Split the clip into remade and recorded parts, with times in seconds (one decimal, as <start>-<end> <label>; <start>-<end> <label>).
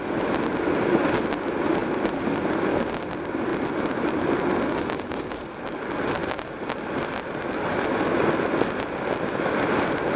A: 0.0-1.8 recorded; 1.8-2.7 remade; 2.7-3.5 recorded; 3.5-5.2 remade; 5.2-6.2 recorded; 6.2-9.0 remade; 9.0-10.2 recorded